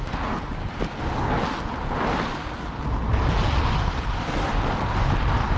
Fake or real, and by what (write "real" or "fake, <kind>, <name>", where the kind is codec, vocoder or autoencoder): real